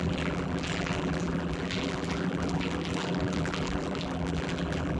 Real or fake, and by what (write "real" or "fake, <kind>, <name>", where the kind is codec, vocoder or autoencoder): fake, vocoder, BigVGAN v2